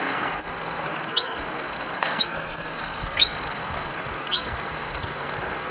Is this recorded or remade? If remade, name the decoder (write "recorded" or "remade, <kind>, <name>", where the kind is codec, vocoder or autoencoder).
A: remade, codec, SNAC